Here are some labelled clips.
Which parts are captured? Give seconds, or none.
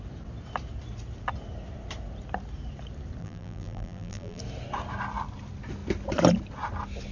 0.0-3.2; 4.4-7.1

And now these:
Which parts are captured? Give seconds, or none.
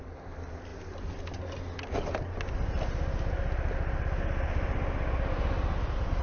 0.0-6.2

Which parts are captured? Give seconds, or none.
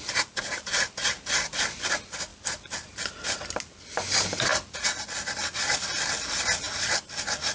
0.0-2.3; 3.6-7.5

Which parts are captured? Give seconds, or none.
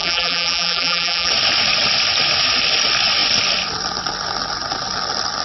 1.3-5.4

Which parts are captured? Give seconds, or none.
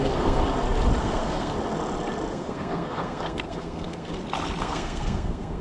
0.4-1.0; 1.5-2.3; 4.1-4.6